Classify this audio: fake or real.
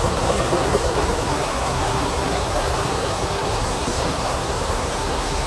fake